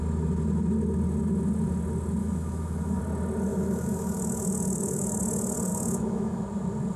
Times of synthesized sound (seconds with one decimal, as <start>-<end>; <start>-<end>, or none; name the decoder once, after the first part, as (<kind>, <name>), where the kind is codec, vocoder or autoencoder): 2.2-3.0 (autoencoder, DAC-VAE); 3.5-5.2; 5.7-6.4